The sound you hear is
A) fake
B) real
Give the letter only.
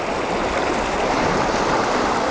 B